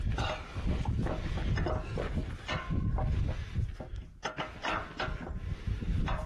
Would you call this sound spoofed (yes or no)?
no